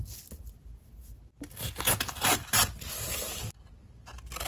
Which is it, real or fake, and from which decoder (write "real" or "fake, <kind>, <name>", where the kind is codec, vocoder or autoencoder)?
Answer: real